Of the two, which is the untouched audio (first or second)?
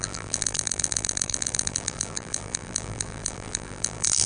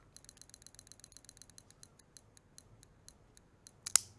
second